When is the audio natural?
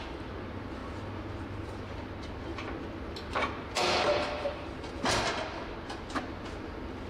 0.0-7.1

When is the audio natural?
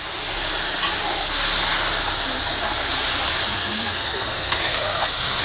0.0-3.5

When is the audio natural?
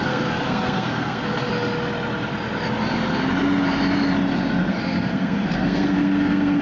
1.5-4.7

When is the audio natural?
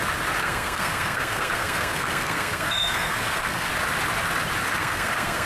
0.0-0.4; 3.7-4.8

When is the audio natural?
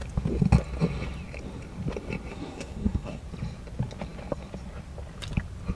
0.0-2.3; 3.2-5.8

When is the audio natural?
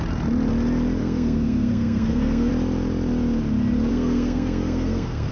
0.0-1.0; 2.5-3.9